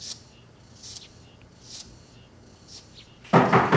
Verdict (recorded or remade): recorded